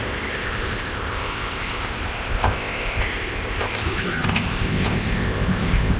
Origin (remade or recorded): remade